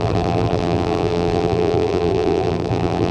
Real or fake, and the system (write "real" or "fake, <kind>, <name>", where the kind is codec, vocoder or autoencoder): fake, vocoder, BigVGAN v2